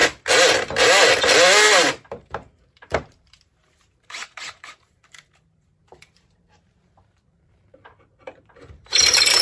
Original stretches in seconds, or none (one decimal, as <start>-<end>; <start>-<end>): 0.0-2.1